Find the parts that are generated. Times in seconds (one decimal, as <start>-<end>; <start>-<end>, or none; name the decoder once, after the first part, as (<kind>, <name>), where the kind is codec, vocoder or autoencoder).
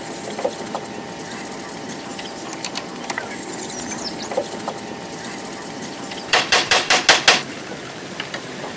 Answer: 2.1-2.8 (vocoder, BigVGAN v2); 4.4-7.0